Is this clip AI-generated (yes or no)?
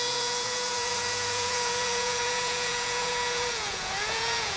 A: yes